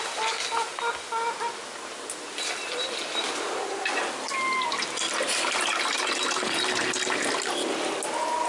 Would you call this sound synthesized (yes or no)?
no